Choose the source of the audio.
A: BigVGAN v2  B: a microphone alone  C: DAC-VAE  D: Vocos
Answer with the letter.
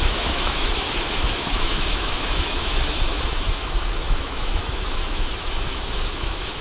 C